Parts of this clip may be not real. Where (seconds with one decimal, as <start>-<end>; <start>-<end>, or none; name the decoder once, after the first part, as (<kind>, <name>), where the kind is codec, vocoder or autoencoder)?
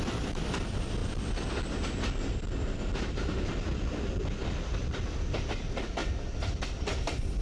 0.0-1.0 (vocoder, BigVGAN v2); 5.4-6.0; 6.8-7.4